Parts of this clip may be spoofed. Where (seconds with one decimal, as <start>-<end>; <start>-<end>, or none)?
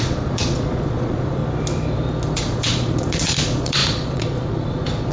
0.0-1.4; 2.3-5.1